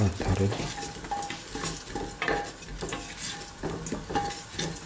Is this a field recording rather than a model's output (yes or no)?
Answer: yes